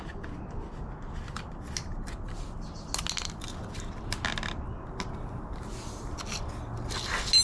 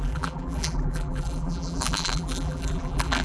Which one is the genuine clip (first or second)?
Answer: first